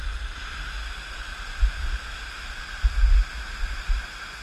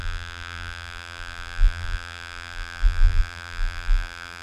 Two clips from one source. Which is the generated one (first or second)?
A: second